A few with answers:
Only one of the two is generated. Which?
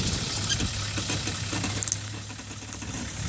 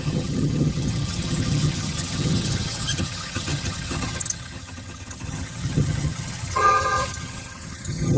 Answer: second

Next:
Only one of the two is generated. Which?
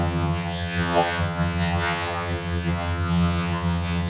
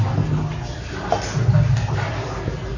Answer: first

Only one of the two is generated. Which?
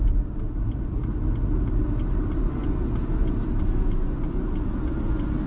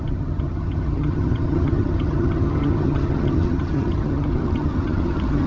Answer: second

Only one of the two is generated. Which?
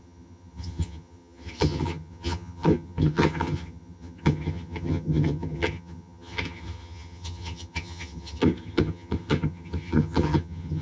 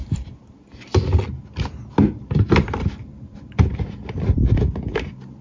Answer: first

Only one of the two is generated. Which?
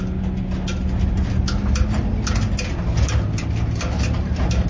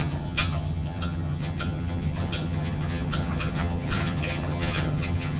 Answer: second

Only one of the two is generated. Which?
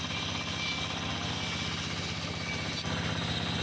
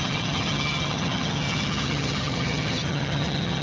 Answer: second